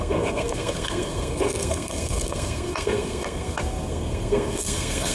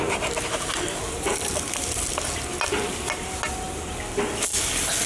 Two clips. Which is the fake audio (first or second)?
first